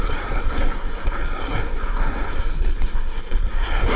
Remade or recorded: remade